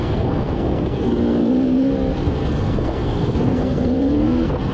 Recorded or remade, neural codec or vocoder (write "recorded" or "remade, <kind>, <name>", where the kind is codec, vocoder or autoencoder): remade, codec, SNAC